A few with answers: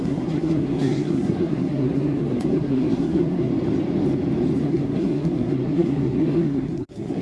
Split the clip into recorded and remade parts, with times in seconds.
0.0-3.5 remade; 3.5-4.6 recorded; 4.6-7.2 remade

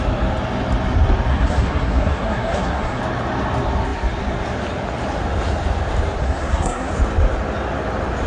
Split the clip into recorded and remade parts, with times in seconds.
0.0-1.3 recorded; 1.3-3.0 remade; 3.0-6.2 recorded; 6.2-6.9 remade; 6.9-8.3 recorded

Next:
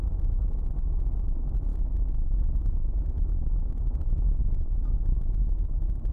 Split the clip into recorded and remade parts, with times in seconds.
0.0-1.7 recorded; 1.7-4.1 remade; 4.1-5.1 recorded; 5.1-6.1 remade